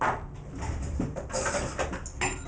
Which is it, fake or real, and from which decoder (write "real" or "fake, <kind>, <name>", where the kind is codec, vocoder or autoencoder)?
real